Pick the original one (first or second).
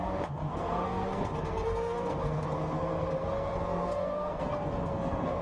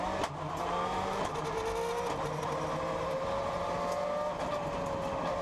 second